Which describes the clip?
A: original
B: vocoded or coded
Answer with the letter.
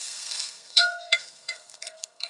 B